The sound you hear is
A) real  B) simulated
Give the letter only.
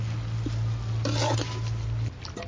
A